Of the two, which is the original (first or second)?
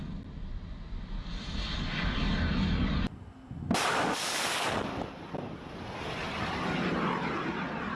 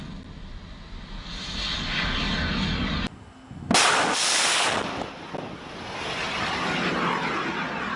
second